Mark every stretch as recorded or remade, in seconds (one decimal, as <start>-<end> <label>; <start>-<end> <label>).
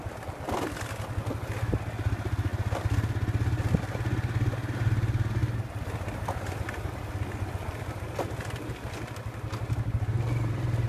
0.0-10.9 recorded